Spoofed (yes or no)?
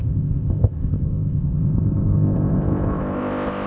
yes